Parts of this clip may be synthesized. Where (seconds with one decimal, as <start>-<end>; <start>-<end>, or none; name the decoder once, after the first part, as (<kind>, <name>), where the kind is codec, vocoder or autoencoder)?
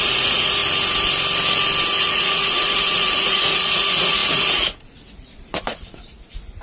0.0-0.6 (vocoder, Vocos); 2.0-6.6